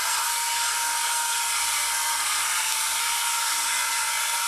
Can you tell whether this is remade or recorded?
remade